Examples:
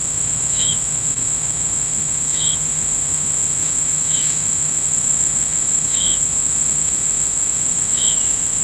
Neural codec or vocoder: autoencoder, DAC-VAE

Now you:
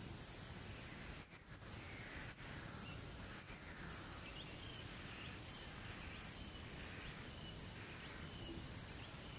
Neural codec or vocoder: none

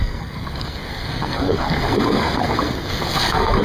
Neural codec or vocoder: codec, SNAC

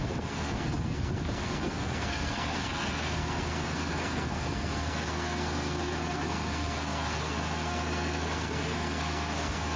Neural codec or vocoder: codec, SNAC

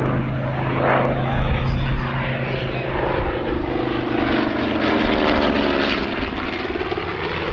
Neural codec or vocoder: none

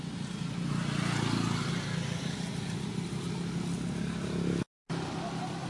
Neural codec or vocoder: none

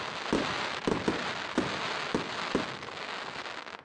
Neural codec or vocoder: none